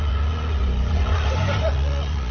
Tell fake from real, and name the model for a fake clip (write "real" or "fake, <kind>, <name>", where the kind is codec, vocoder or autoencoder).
fake, vocoder, Vocos